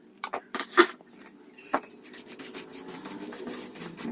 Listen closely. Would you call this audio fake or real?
fake